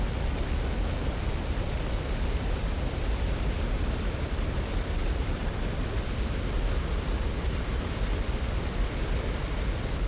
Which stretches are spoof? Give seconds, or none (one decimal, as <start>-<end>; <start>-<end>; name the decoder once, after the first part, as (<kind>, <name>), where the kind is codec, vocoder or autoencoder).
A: 0.0-10.1 (vocoder, BigVGAN v2)